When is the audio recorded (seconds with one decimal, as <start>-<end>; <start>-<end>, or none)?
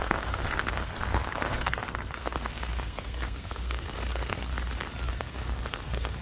4.5-5.1